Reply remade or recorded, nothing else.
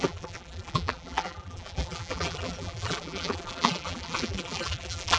remade